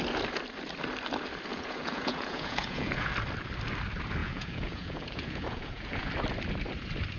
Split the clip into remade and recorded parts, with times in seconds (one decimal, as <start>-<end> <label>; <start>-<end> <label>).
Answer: 0.0-1.5 recorded; 1.5-3.1 remade; 3.1-4.2 recorded; 4.2-6.1 remade; 6.1-7.2 recorded